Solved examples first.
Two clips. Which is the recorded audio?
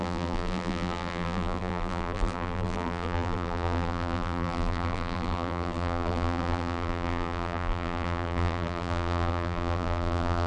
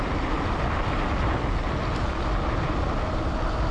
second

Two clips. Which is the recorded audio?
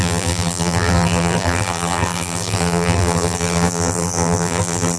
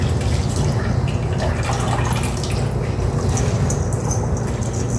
second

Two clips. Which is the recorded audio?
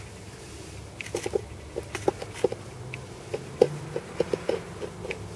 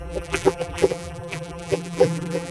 first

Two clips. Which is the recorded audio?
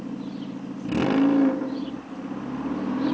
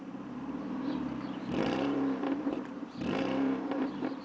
first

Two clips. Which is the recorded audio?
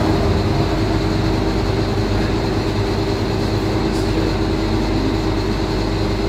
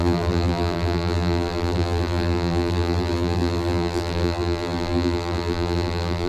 first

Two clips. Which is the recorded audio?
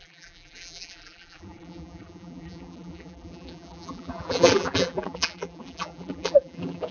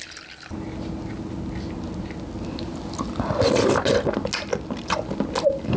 second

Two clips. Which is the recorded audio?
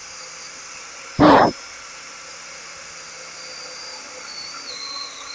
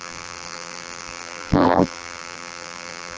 first